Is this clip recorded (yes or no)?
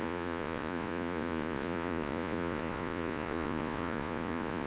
no